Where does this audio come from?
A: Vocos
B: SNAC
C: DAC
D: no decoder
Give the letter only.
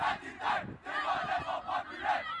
D